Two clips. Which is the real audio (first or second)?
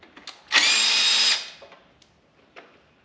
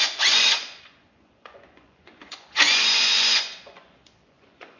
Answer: first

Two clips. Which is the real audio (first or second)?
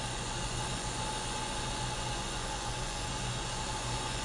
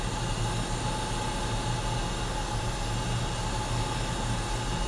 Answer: second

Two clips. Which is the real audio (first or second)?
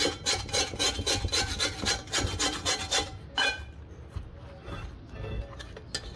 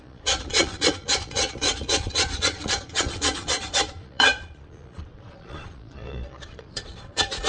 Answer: first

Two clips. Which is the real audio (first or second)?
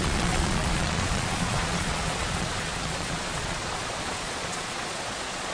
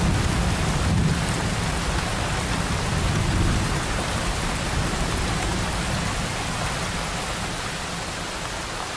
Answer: second